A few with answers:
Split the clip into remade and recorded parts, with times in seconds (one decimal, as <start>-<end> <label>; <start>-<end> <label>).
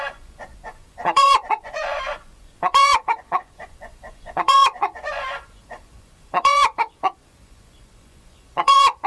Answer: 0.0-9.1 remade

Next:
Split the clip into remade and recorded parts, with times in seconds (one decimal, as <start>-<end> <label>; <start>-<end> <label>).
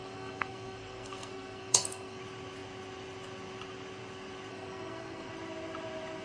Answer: 0.0-2.2 remade; 2.2-4.5 recorded; 4.5-5.3 remade; 5.3-6.2 recorded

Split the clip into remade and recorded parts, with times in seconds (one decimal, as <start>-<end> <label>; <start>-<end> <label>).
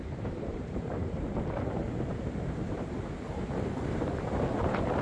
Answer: 0.0-5.0 remade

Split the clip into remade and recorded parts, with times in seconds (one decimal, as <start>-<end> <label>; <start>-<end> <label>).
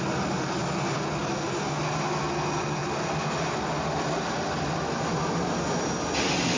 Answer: 0.0-6.6 recorded